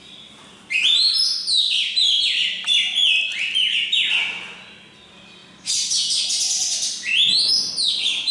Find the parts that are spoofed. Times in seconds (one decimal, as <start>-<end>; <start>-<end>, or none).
none